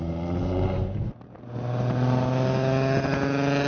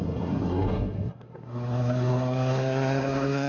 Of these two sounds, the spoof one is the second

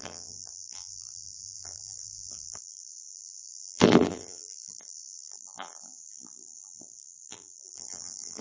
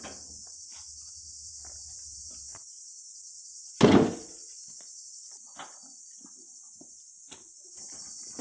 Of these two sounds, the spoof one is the first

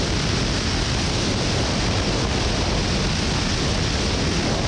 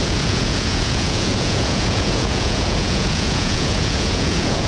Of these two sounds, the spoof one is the second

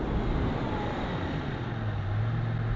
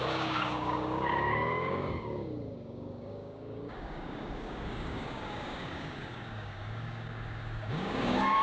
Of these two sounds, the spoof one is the second